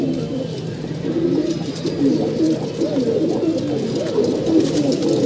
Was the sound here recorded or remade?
recorded